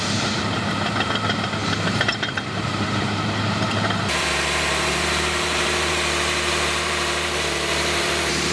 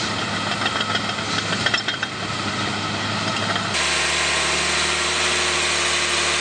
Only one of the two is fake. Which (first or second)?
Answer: first